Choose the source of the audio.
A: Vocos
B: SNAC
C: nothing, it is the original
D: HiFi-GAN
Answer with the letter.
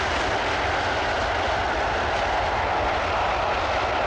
C